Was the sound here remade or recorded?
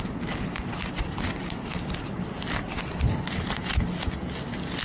recorded